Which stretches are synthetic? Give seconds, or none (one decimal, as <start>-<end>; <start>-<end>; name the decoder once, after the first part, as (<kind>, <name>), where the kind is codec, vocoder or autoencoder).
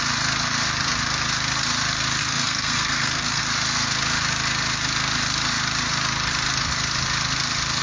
2.2-3.4 (codec, SNAC)